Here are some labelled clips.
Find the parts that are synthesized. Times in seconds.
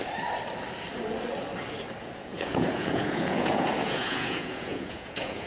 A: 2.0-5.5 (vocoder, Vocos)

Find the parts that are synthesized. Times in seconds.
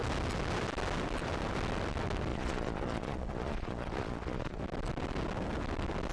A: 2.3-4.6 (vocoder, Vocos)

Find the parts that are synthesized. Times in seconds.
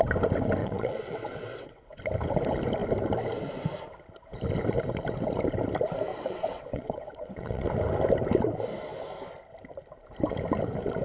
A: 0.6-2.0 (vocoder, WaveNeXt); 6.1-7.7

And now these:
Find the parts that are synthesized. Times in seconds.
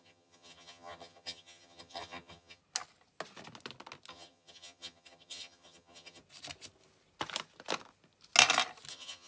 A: 0.0-2.6 (vocoder, HiFi-GAN); 4.1-6.2; 8.9-9.3